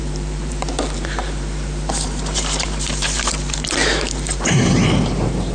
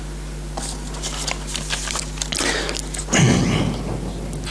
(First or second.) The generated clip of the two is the first